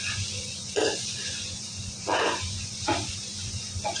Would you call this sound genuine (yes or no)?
no